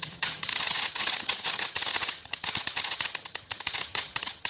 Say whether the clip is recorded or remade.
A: remade